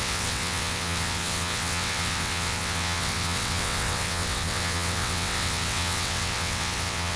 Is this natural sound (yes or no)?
no